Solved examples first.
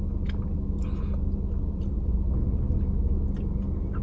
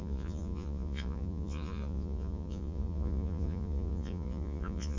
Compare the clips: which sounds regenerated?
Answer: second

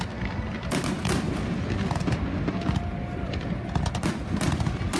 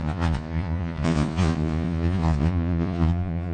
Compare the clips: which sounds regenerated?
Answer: second